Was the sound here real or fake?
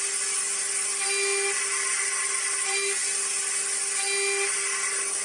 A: real